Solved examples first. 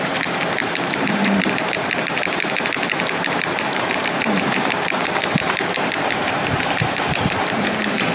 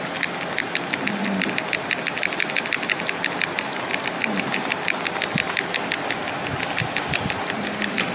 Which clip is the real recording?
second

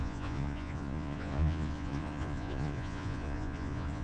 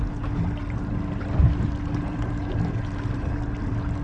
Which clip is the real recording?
second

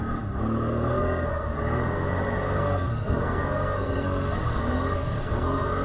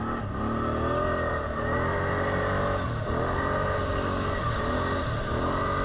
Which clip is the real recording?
second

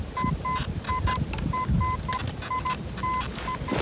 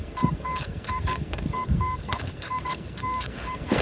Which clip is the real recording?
first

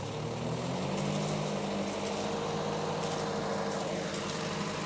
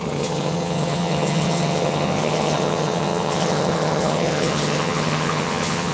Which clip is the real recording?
first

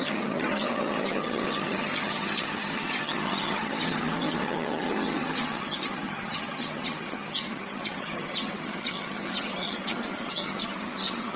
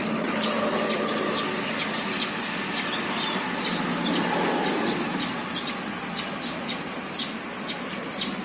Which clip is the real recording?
second